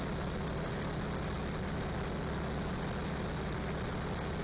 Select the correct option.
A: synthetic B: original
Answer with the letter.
B